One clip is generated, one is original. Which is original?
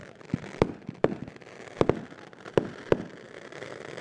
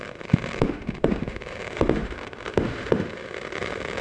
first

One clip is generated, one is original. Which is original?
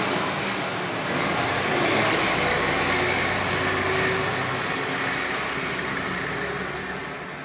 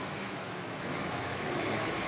first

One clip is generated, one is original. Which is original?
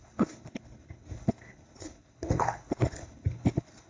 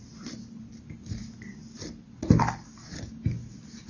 second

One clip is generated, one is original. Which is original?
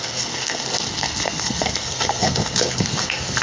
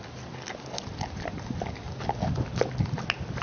second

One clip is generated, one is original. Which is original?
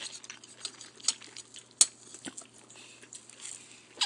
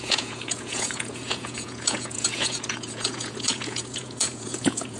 first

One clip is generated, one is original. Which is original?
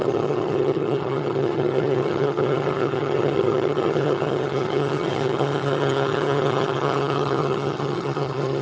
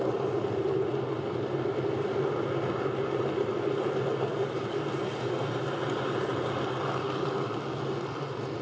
second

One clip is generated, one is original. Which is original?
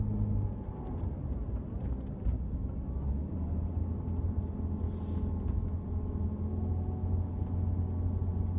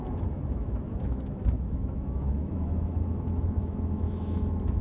first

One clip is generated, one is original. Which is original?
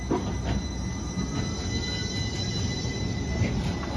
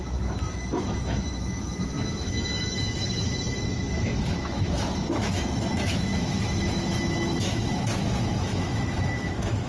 first